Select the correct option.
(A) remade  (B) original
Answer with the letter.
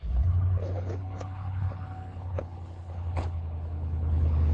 A